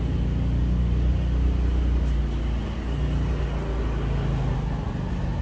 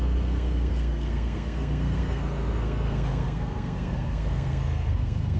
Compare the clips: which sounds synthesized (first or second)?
second